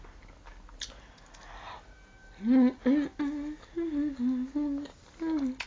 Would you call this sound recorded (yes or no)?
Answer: yes